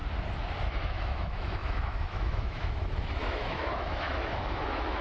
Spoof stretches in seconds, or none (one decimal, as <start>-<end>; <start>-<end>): 0.6-5.0